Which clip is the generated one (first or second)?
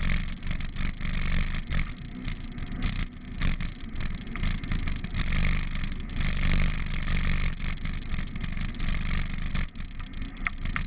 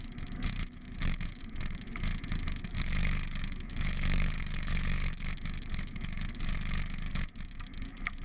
second